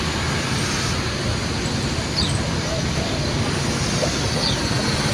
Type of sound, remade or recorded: recorded